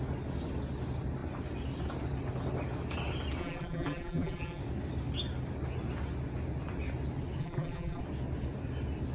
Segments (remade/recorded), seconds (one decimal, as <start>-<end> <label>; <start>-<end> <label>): 0.0-3.4 recorded; 3.4-4.6 remade; 4.6-7.4 recorded; 7.4-8.0 remade; 8.0-9.1 recorded